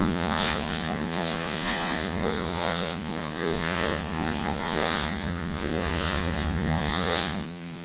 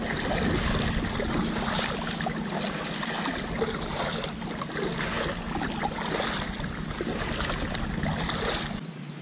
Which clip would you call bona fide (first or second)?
second